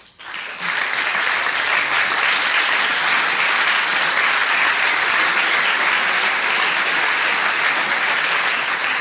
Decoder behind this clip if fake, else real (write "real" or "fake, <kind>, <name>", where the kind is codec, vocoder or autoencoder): real